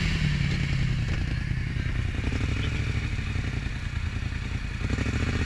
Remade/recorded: recorded